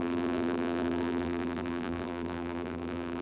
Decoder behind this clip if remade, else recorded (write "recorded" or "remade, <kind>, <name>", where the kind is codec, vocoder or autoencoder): remade, vocoder, BigVGAN v2